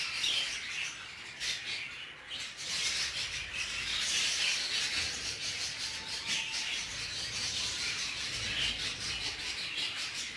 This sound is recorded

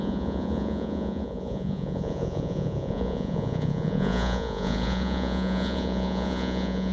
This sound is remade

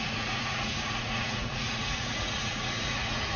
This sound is remade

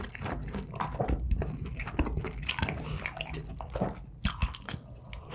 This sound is recorded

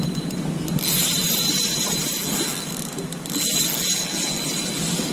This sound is recorded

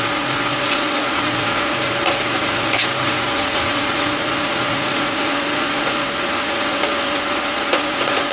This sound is remade